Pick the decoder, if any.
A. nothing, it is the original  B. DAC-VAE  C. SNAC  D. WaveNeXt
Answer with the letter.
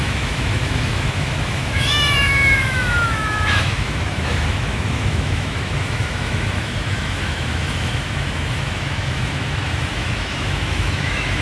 B